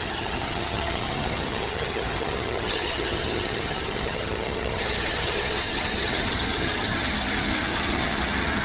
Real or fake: fake